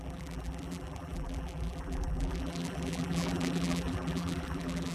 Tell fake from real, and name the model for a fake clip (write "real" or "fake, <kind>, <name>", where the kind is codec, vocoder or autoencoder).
fake, vocoder, BigVGAN v2